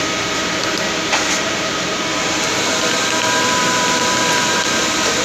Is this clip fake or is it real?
fake